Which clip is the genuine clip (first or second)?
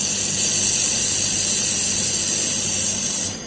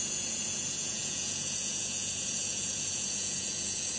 first